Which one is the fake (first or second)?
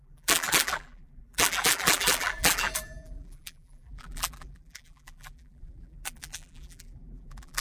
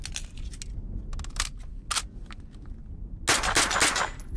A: first